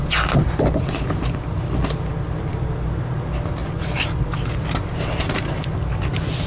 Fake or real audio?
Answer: real